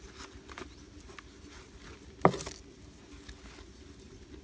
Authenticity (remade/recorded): recorded